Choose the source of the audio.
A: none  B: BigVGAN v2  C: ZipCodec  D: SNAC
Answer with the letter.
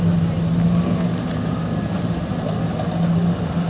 A